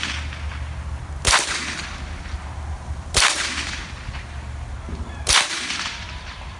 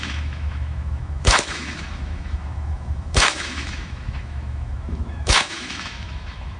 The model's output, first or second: second